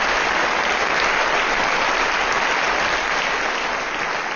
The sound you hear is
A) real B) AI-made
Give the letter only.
A